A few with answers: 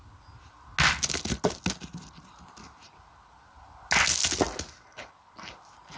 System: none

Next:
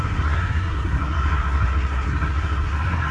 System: codec, SNAC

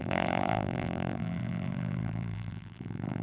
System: vocoder, BigVGAN v2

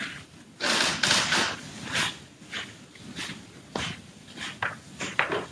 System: none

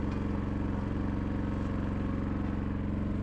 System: none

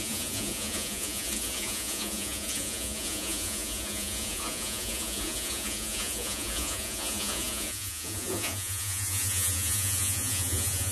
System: vocoder, Vocos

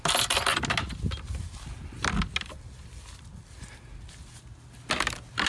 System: none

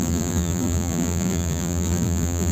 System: vocoder, BigVGAN v2